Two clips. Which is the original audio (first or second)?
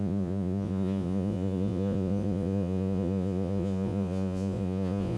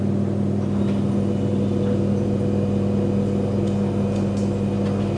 second